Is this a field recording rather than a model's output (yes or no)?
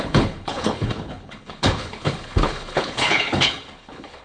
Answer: no